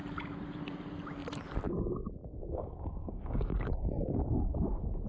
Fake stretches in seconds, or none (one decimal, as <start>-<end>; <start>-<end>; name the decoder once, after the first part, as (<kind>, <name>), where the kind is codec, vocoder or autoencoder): 2.2-4.5 (codec, DAC)